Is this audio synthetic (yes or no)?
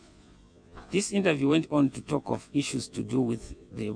yes